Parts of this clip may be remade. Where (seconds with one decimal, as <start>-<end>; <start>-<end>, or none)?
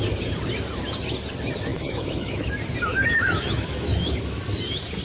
1.7-2.5; 2.9-4.4